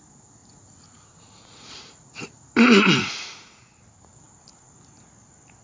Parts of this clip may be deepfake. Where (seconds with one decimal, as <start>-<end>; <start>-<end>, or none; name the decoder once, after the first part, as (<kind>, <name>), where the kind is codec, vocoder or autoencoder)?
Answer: 0.4-3.8 (vocoder, Vocos)